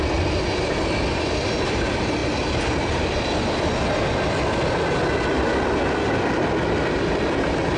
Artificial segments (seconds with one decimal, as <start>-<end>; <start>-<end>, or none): none